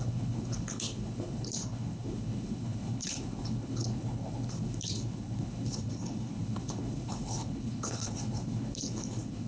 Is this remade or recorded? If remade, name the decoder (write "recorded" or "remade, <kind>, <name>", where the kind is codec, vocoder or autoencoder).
remade, codec, HILCodec